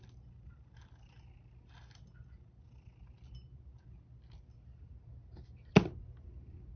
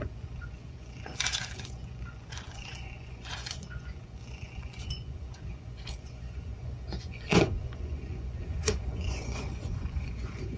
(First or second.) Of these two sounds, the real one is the first